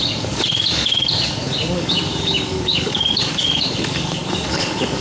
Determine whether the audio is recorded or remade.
remade